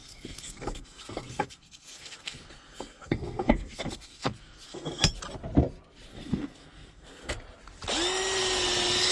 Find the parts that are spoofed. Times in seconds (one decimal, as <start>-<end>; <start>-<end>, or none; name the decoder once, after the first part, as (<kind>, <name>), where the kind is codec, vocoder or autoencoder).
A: 0.0-5.1 (codec, SNAC); 6.1-7.3